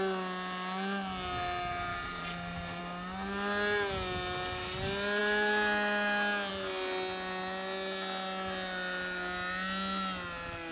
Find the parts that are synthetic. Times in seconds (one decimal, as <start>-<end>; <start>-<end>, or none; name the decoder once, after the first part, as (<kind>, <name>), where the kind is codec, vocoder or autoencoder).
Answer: 1.9-2.8 (vocoder, BigVGAN v2)